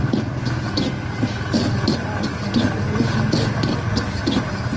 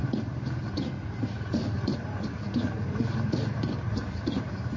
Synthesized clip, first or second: second